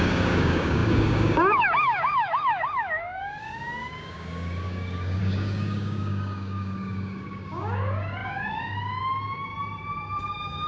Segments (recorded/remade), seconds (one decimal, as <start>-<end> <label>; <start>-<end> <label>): 0.0-9.5 remade; 9.5-10.2 recorded; 10.2-10.7 remade